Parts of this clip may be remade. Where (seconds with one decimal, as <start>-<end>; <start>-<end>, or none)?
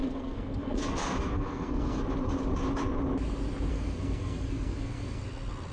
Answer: 0.0-2.0; 3.7-5.2